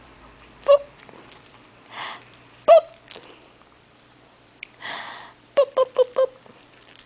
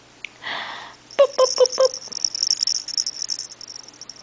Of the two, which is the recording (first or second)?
second